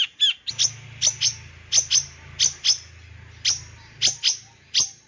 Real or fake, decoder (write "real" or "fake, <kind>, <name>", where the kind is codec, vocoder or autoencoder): real